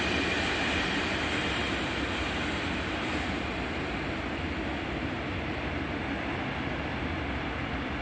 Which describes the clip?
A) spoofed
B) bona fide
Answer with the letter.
B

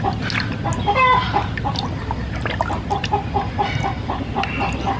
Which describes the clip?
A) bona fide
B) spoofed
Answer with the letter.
A